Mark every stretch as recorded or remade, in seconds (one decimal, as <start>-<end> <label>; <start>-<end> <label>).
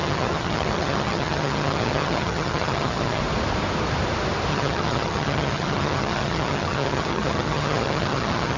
0.0-3.2 remade; 3.2-4.5 recorded; 4.5-8.6 remade